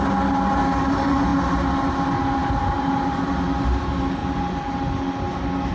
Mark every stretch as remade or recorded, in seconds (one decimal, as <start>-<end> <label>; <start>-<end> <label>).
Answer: 0.0-5.7 recorded